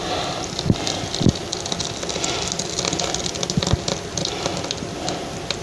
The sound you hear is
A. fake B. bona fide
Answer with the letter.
B